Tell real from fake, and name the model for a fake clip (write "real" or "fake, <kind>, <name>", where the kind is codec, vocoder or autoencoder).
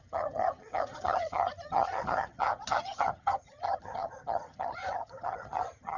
fake, vocoder, HiFi-GAN